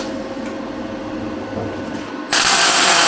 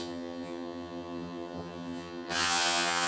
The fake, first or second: second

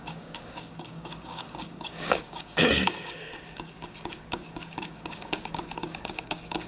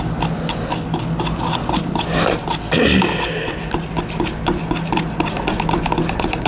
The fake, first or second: first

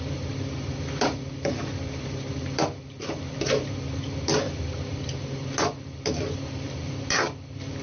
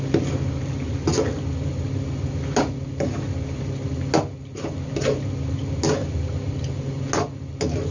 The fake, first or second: first